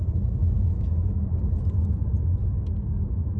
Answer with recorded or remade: recorded